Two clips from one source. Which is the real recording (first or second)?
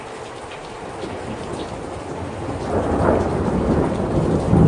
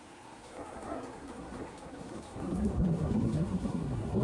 first